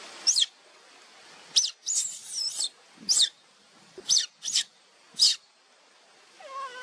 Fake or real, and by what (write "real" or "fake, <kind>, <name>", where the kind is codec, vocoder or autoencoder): real